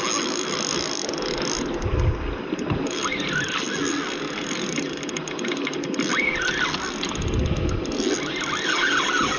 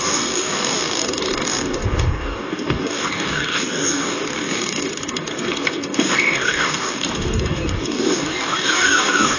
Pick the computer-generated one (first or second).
second